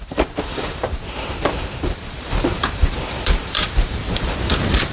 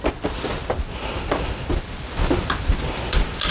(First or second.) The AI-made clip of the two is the first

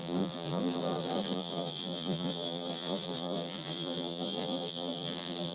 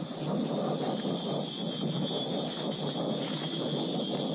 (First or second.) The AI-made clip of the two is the first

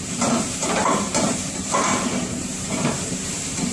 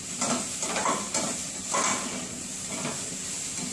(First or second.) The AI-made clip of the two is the first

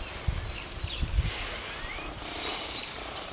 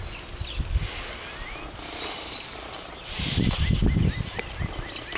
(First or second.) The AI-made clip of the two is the first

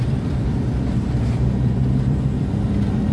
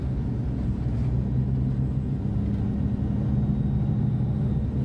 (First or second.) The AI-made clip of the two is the first